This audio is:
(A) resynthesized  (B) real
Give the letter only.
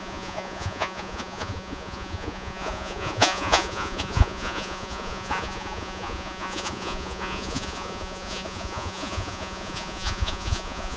A